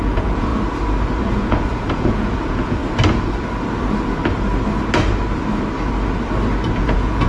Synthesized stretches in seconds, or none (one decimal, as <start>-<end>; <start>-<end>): 0.0-0.5; 1.2-2.8; 6.7-7.3